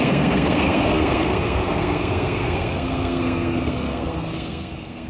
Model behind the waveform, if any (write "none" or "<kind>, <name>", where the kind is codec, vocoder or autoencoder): codec, SNAC